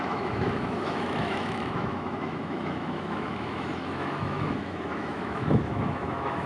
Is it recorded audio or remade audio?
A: remade